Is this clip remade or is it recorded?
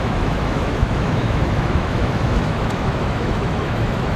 remade